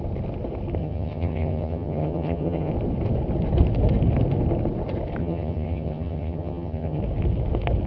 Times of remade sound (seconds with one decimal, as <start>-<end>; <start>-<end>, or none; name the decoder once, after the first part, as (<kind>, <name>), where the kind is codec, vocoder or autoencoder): 0.8-2.7 (vocoder, HiFi-GAN); 5.2-7.0

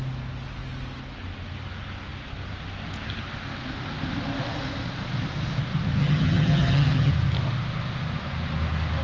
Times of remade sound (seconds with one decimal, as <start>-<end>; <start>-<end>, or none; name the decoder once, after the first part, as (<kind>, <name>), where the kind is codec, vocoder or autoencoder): 6.0-7.1 (vocoder, HiFi-GAN)